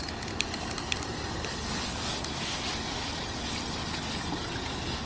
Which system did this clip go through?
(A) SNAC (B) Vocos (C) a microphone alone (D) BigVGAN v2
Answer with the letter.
C